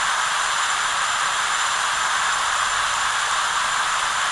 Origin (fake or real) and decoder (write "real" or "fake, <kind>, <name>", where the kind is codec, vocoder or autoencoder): real